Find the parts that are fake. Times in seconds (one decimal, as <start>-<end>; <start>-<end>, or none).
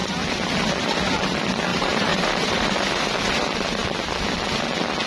1.7-3.3